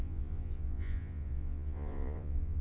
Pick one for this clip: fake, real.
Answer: fake